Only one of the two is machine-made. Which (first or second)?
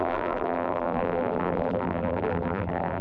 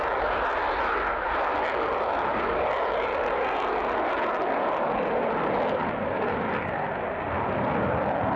first